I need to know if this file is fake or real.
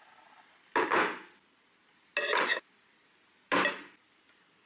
real